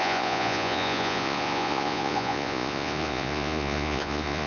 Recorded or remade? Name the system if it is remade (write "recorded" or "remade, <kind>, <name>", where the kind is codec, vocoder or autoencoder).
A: remade, vocoder, Vocos